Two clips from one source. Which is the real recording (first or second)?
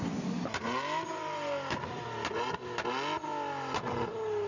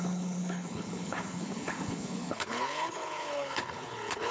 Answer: first